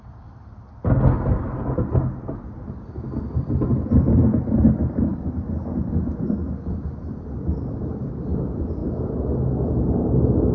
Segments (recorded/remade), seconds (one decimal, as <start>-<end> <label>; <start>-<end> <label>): 0.0-10.5 recorded